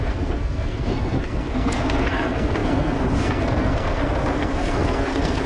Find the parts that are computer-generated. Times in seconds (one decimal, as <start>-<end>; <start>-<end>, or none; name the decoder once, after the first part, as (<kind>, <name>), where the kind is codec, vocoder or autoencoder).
0.0-5.5 (codec, SNAC)